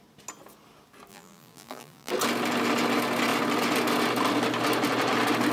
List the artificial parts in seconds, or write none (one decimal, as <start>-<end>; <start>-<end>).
1.1-2.1